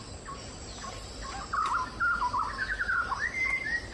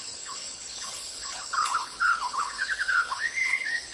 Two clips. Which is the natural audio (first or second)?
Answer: first